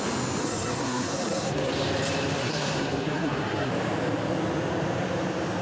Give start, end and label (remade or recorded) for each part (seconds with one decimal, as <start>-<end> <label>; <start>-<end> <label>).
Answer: 0.0-0.4 recorded; 0.4-1.7 remade; 1.7-2.4 recorded; 2.4-3.7 remade; 3.7-5.6 recorded